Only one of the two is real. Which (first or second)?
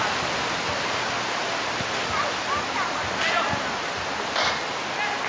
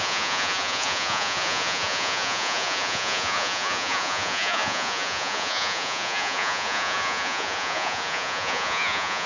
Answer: first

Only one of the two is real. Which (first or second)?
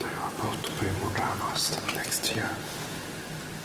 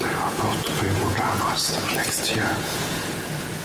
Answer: first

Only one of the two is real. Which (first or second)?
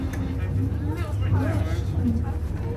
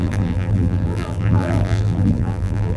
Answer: first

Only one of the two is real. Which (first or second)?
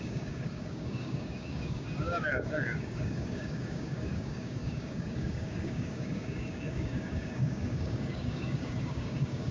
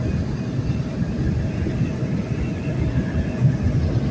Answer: second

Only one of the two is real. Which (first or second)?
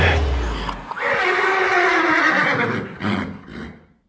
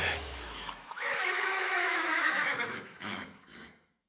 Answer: first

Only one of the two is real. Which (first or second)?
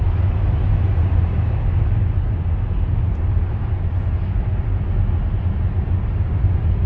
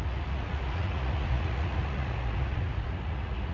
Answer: first